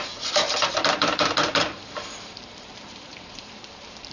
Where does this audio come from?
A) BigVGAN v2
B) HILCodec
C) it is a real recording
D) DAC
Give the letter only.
A